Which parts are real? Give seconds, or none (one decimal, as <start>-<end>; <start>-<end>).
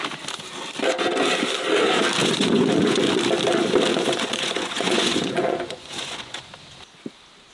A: 0.0-2.2; 3.0-3.9; 6.5-7.5